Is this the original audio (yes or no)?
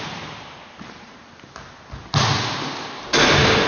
yes